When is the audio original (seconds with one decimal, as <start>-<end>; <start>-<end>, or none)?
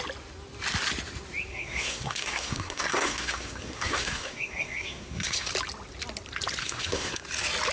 0.0-1.5; 5.5-6.6; 7.2-7.7